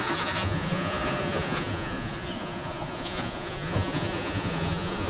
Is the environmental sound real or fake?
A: fake